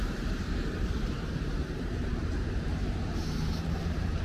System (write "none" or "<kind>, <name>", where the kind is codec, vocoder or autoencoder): vocoder, BigVGAN v2